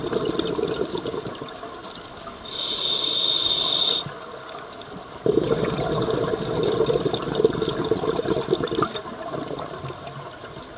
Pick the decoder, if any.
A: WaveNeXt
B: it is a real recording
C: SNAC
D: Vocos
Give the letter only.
B